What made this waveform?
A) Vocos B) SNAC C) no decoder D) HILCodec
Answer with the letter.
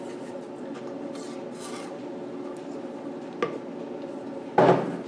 C